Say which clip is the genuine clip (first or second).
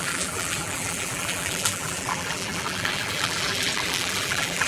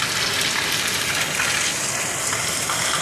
second